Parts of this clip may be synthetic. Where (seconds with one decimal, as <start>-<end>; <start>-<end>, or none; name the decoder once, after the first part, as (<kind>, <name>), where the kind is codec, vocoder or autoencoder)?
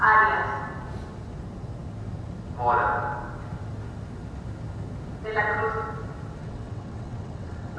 6.4-7.8 (vocoder, WaveNeXt)